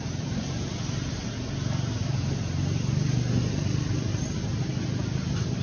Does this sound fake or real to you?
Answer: real